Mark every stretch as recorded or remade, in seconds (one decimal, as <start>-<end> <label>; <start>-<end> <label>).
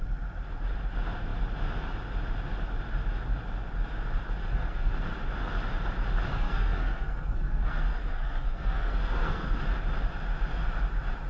0.0-4.4 recorded; 4.4-4.9 remade; 4.9-6.3 recorded; 6.3-9.6 remade; 9.6-11.3 recorded